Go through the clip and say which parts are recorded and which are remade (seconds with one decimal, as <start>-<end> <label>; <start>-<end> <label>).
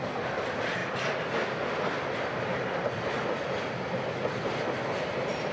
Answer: 0.0-5.5 recorded